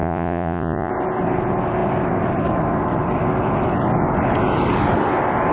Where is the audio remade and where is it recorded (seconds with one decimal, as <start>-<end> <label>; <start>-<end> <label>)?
0.0-0.9 remade; 0.9-5.5 recorded